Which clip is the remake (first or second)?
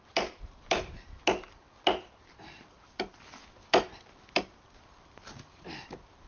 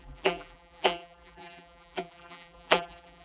second